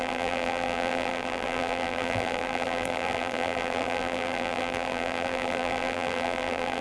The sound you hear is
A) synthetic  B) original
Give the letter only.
A